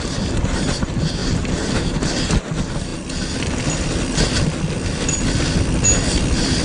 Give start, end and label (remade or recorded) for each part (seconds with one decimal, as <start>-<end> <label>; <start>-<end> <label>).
0.0-6.6 recorded

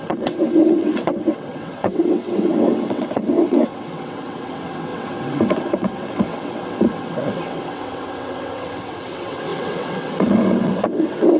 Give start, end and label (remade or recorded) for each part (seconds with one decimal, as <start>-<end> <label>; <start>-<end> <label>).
0.0-11.4 remade

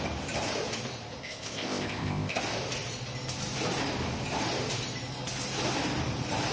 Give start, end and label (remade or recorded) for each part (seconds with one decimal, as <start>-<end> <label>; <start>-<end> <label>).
0.0-1.2 recorded; 1.2-2.4 remade; 2.4-6.5 recorded